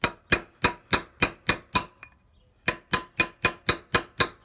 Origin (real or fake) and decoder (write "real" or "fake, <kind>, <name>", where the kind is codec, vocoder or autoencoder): real